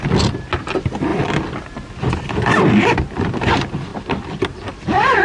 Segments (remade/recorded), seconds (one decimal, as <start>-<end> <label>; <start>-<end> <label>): 0.0-5.2 recorded